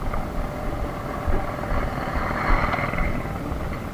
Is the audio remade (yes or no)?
no